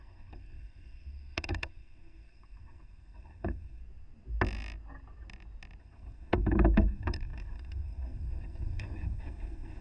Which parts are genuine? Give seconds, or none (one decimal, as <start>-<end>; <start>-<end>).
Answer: 3.8-5.8